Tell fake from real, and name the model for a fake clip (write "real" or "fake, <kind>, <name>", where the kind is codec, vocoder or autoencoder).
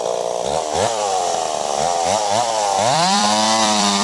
fake, vocoder, BigVGAN v2